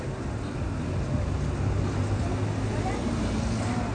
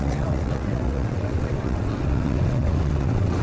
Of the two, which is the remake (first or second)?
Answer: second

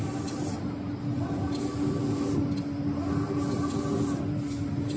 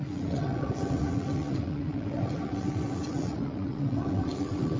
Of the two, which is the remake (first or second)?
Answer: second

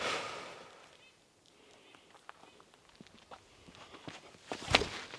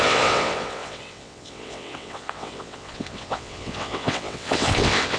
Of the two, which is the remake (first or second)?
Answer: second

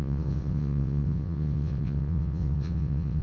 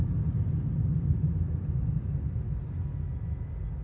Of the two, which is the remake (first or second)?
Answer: first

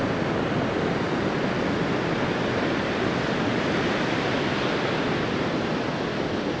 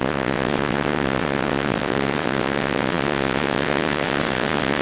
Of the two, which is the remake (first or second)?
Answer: second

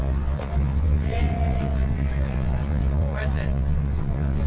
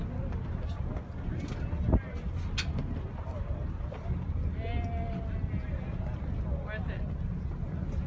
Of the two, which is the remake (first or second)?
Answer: first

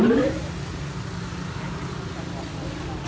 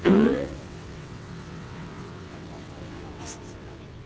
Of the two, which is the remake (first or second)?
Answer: second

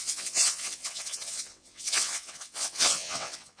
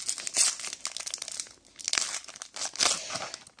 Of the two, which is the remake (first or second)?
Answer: first